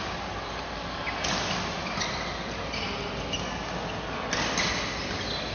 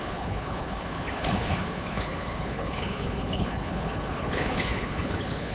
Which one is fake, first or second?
second